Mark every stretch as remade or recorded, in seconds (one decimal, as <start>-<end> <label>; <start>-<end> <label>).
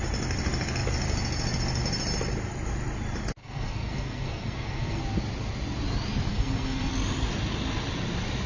0.0-3.4 recorded; 3.4-5.0 remade; 5.0-6.3 recorded; 6.3-6.9 remade; 6.9-8.5 recorded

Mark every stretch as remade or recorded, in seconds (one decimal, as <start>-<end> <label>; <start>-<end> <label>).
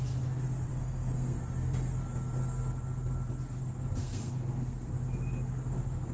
0.0-0.7 recorded; 0.7-1.4 remade; 1.4-4.0 recorded; 4.0-4.9 remade; 4.9-6.1 recorded